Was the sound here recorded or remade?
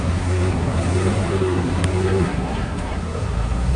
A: remade